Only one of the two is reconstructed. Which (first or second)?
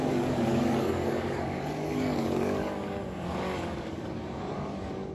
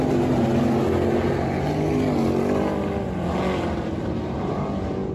first